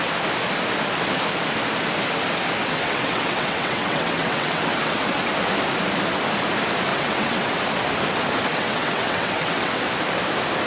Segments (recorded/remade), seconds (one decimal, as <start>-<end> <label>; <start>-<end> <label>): 0.0-2.6 recorded; 2.6-5.3 remade; 5.3-6.9 recorded; 6.9-7.6 remade; 7.6-8.5 recorded; 8.5-9.8 remade; 9.8-10.7 recorded